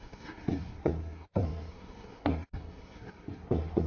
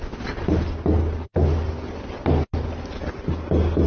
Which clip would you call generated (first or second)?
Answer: first